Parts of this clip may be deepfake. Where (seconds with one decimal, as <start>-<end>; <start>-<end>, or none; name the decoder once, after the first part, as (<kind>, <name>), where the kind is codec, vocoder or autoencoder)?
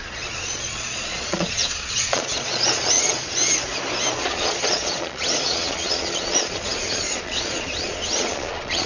0.0-3.4 (vocoder, Vocos); 4.1-8.9